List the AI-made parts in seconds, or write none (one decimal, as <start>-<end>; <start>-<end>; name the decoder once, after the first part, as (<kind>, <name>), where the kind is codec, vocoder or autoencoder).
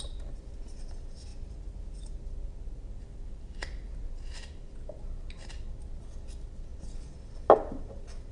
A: none